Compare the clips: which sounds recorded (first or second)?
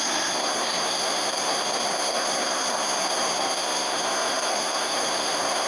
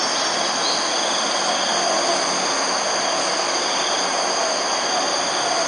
second